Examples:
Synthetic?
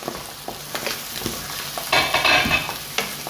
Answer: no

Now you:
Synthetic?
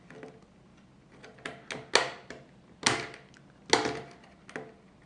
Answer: no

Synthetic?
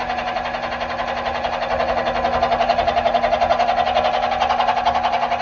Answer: no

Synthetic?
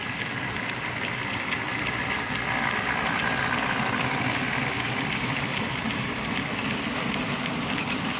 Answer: no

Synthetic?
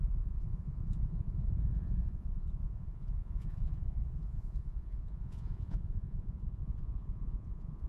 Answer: yes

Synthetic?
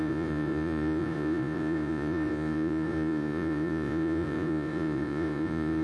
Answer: yes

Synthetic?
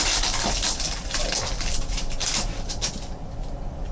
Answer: no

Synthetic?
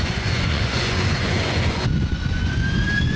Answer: yes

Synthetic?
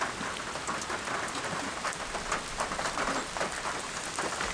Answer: no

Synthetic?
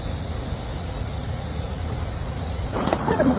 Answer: yes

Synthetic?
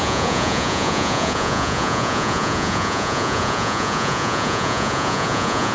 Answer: yes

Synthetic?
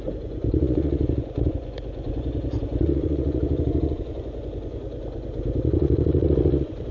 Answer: yes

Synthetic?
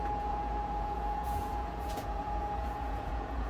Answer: yes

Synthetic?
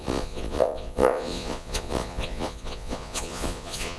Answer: yes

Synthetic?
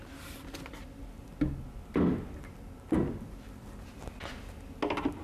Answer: no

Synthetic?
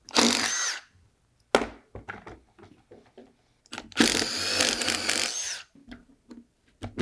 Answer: no